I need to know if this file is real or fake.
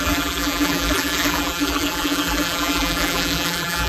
fake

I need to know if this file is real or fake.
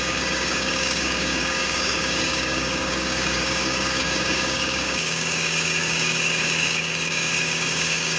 fake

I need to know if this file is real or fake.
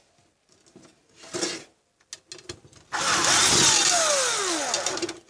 real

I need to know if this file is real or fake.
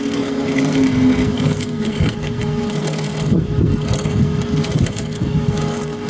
fake